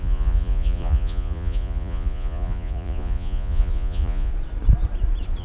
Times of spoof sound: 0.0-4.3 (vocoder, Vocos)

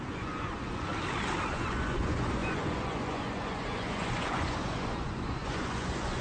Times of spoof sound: 0.0-0.9 (vocoder, Vocos); 1.5-6.2